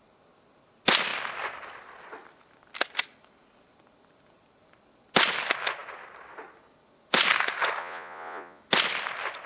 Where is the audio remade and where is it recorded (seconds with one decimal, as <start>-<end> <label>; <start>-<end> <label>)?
0.0-7.8 recorded; 7.8-8.6 remade; 8.6-9.5 recorded